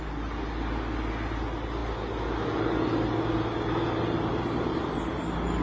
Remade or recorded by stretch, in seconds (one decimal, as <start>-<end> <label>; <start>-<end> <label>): 0.0-5.6 recorded